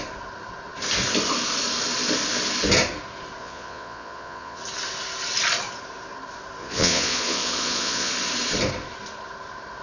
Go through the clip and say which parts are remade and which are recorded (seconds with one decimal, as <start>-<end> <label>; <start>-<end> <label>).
0.0-3.4 recorded; 3.4-4.6 remade; 4.6-6.6 recorded; 6.6-8.1 remade; 8.1-9.8 recorded